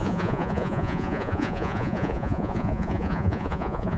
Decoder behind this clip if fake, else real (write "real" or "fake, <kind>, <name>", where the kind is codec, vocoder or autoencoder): fake, vocoder, Vocos